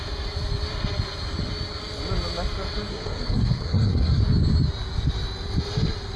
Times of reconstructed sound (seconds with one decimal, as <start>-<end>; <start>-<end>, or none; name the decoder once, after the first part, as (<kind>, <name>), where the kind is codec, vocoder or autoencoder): 2.9-4.2 (codec, SNAC)